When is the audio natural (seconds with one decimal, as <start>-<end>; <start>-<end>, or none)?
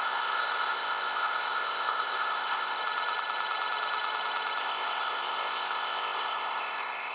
2.8-4.6